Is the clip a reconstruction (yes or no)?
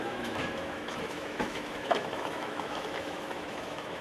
yes